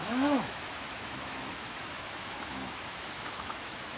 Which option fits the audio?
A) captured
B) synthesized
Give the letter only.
B